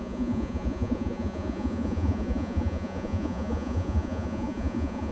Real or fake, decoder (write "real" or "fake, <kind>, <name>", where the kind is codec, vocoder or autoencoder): fake, vocoder, Vocos